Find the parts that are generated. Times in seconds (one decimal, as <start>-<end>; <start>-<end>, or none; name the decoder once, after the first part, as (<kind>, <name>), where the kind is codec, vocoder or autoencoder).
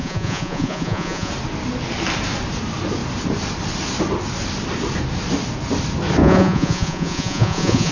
0.0-1.3 (vocoder, Vocos); 6.2-7.9